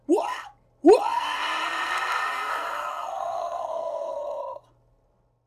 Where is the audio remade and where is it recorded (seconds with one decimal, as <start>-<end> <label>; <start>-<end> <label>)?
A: 0.0-1.1 recorded; 1.1-4.4 remade; 4.4-5.5 recorded